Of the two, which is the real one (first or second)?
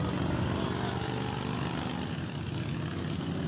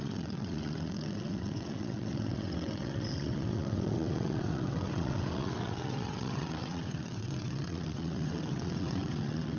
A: first